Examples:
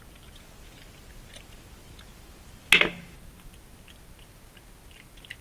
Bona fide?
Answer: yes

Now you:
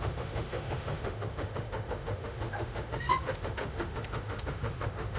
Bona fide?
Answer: no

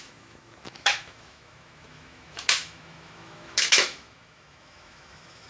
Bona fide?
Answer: no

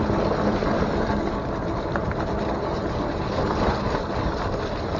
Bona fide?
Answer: yes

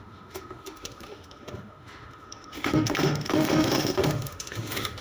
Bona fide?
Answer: no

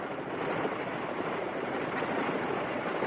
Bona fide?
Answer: yes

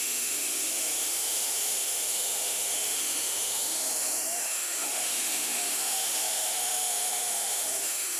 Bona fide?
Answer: no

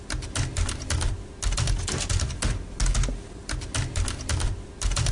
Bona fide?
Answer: yes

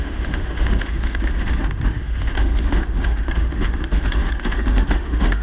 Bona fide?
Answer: no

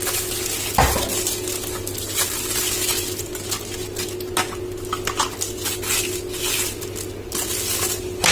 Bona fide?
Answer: yes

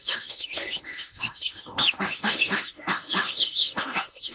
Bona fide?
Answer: no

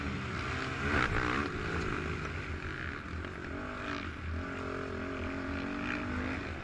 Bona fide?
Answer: yes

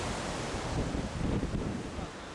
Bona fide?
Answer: yes